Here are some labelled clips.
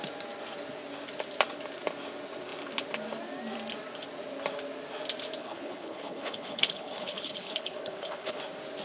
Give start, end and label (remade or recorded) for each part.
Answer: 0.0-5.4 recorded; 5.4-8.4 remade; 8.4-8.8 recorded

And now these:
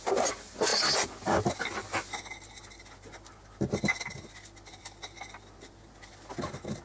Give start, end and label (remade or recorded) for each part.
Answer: 0.0-6.8 recorded

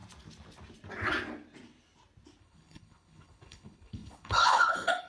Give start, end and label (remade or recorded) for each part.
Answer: 0.0-2.4 recorded; 2.4-5.1 remade

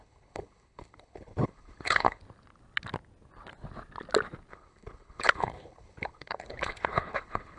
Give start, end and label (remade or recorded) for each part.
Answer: 0.0-2.2 remade; 2.2-4.5 recorded; 4.5-7.6 remade

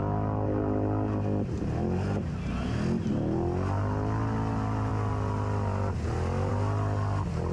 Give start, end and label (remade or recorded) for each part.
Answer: 0.0-7.5 recorded

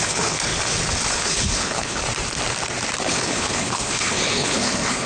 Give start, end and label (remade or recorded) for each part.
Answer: 0.0-0.5 remade; 0.5-1.0 recorded; 1.0-2.0 remade; 2.0-3.0 recorded; 3.0-5.1 remade

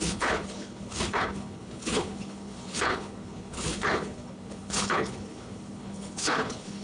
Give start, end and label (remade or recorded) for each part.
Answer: 0.0-6.8 remade

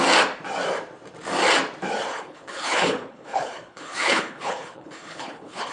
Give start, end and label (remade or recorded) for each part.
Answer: 0.0-2.1 recorded; 2.1-5.7 remade